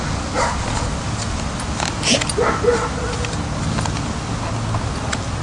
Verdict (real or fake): real